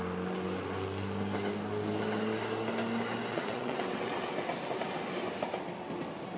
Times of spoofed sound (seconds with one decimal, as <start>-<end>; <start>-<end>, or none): 3.3-4.3